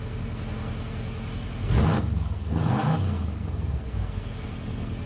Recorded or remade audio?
remade